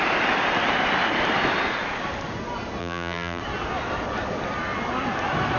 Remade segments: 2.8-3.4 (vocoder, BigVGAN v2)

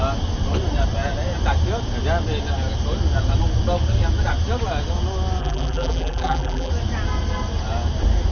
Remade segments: 5.4-6.7 (vocoder, BigVGAN v2)

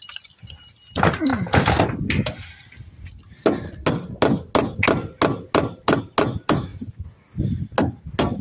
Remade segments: none